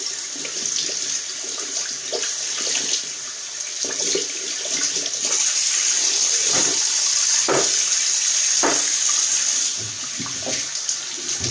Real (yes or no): yes